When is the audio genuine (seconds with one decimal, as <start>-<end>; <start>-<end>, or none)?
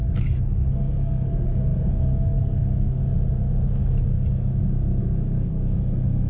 3.0-5.0